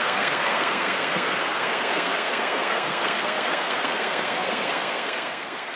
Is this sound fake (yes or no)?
yes